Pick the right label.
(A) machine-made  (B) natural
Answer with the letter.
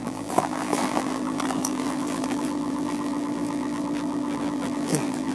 A